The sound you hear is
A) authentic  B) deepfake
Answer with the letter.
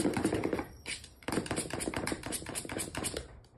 B